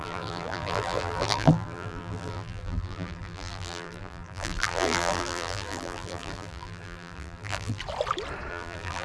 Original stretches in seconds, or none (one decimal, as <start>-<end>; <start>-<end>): 7.8-8.5